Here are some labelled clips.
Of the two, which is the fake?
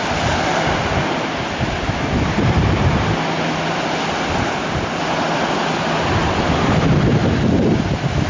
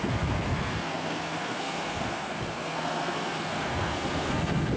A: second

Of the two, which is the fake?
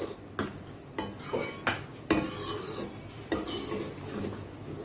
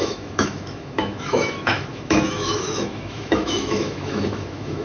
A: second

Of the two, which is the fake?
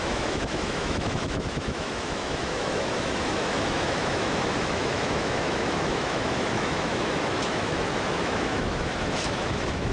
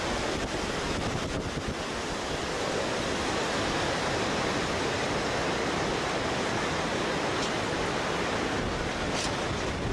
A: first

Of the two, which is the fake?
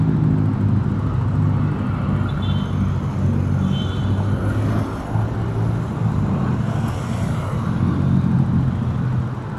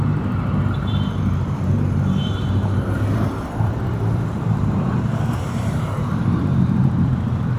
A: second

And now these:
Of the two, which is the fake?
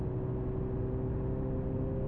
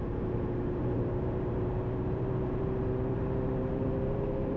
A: second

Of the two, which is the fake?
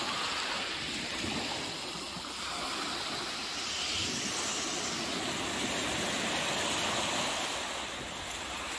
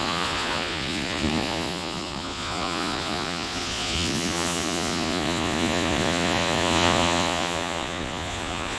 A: second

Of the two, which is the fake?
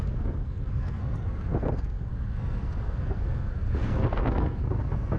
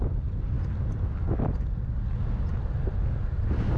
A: first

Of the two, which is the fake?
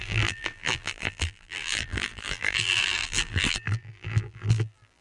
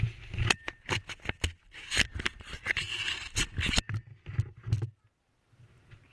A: first